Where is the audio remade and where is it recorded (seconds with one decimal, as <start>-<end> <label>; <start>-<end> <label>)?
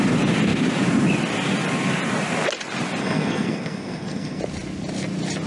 0.0-3.0 recorded; 3.0-4.4 remade; 4.4-5.5 recorded